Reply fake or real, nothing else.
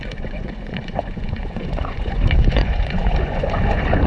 fake